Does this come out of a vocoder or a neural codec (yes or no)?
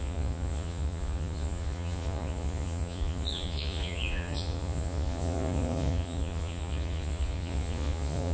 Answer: yes